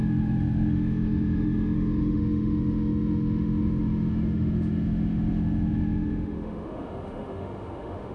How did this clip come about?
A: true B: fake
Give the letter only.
B